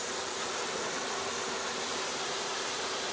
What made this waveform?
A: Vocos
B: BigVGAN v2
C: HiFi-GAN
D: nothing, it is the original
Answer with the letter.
B